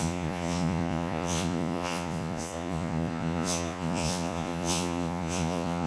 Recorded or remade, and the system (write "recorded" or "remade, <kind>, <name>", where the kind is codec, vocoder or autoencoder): remade, vocoder, Vocos